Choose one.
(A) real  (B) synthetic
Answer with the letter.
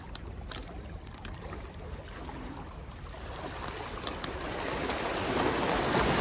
A